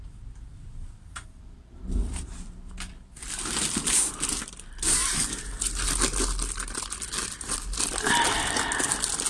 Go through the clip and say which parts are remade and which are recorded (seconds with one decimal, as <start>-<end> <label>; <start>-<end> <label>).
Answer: 0.0-9.3 recorded

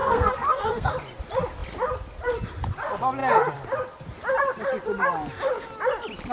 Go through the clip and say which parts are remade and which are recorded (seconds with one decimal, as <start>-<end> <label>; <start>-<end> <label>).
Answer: 0.0-0.9 remade; 0.9-6.3 recorded

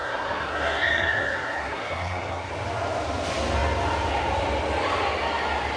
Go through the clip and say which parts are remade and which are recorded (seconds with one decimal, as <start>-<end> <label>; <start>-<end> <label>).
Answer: 0.0-2.5 remade; 2.5-5.8 recorded

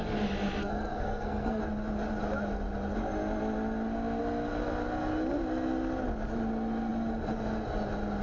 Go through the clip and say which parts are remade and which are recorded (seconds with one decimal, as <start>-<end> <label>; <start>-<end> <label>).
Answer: 0.0-0.6 recorded; 0.6-1.6 remade; 1.6-8.2 recorded